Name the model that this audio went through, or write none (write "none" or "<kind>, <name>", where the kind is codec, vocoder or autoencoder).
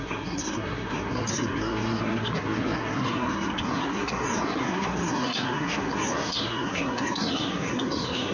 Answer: codec, SNAC